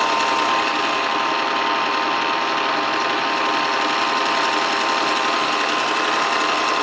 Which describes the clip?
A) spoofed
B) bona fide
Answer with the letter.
B